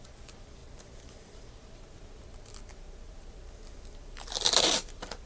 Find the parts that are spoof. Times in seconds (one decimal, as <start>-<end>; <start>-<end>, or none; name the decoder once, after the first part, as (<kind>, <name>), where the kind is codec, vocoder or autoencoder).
0.0-5.3 (vocoder, BigVGAN v2)